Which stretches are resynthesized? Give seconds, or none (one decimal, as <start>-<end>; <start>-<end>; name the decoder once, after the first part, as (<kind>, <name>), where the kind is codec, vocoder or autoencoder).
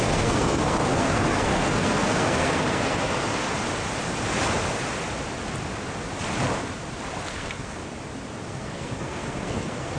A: 0.0-3.3 (codec, SNAC); 7.3-7.8; 8.4-10.0